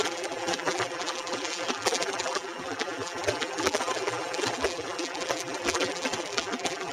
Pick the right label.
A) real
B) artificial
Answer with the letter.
B